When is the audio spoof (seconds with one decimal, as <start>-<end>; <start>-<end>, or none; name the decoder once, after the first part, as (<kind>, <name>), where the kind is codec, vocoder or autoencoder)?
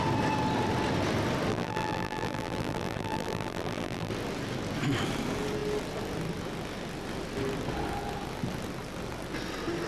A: 1.5-4.1 (vocoder, BigVGAN v2)